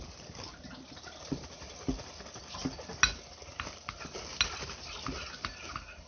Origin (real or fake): real